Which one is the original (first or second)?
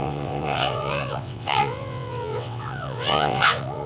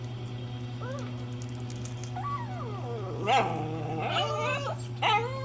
second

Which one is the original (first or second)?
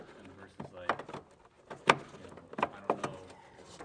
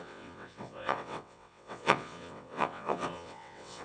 first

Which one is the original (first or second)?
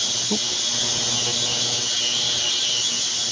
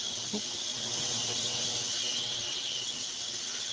first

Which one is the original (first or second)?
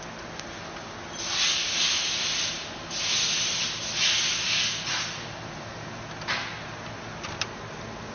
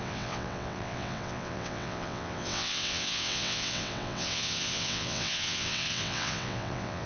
first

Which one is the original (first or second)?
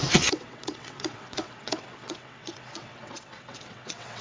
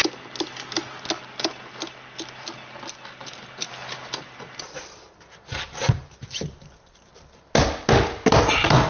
second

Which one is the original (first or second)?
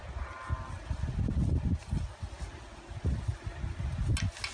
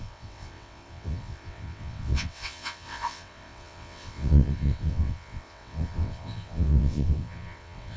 first